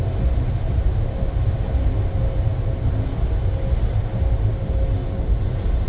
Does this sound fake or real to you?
real